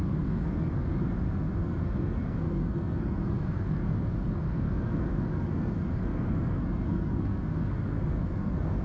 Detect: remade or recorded remade